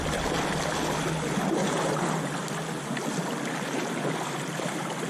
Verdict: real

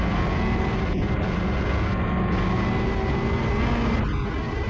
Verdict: real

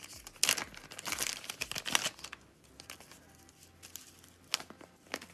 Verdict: real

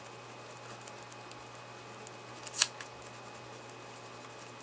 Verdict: real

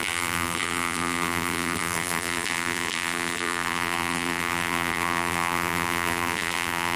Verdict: fake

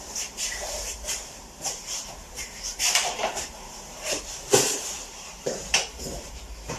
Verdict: fake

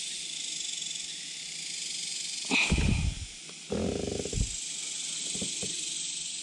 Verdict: real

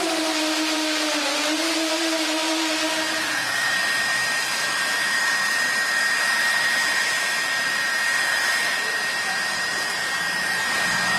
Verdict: fake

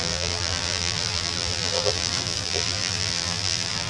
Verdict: fake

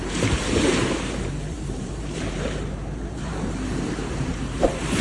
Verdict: fake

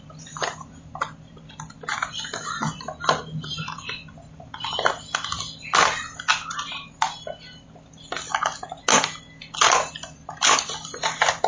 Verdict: real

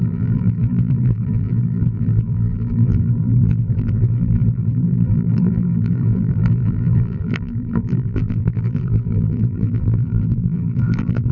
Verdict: fake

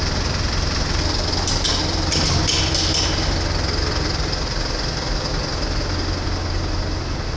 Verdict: real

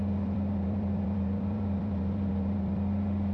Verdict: fake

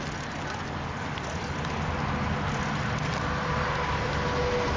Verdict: real